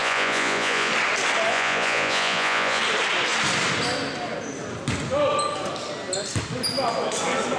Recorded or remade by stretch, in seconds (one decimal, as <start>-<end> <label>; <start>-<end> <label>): 0.0-0.9 remade; 0.9-1.5 recorded; 1.5-2.8 remade; 2.8-7.6 recorded